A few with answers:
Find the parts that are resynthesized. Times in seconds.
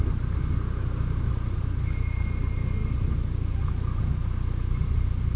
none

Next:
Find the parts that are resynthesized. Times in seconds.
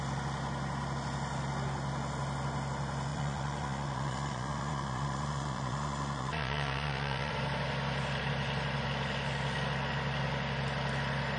3.1-7.3 (vocoder, Vocos)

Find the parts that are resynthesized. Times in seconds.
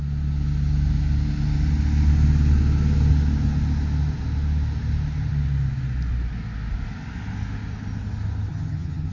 8.5-9.1 (vocoder, HiFi-GAN)